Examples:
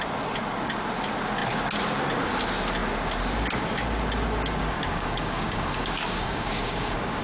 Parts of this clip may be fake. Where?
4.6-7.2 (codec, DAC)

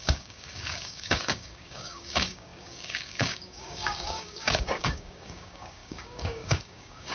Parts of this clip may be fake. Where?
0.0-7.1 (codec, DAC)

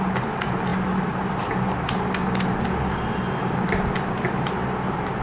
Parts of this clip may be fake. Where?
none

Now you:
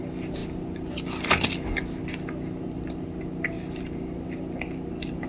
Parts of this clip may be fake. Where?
none

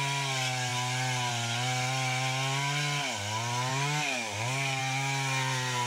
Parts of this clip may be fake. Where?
3.7-4.8 (codec, DAC)